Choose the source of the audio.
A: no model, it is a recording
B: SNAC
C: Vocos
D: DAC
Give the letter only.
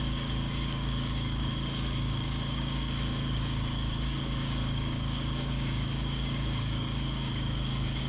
D